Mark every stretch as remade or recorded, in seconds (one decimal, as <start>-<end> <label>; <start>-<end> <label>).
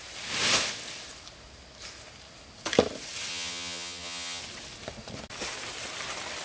0.0-3.3 recorded; 3.3-4.4 remade; 4.4-6.4 recorded